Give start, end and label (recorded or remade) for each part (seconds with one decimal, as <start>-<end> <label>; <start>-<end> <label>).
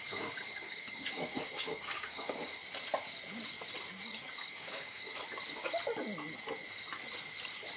0.0-2.6 remade; 2.6-4.5 recorded; 4.5-5.2 remade; 5.2-7.8 recorded